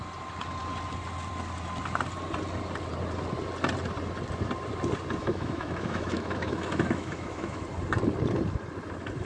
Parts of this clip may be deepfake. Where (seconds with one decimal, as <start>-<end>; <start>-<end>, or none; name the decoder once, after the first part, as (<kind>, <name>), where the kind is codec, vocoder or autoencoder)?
5.2-7.6 (autoencoder, DAC-VAE)